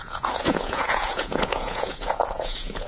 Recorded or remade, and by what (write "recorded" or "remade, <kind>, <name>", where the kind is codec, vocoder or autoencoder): remade, vocoder, Vocos